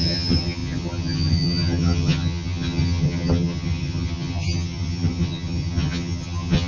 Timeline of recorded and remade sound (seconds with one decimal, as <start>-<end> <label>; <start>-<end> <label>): 0.0-6.7 remade